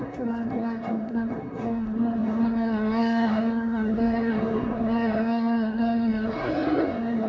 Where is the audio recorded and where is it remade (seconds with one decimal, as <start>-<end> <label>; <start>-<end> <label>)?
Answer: 0.0-7.3 remade